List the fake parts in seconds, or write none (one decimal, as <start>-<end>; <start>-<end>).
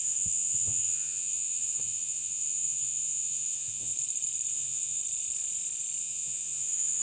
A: 0.0-3.9; 4.5-5.0; 6.0-7.0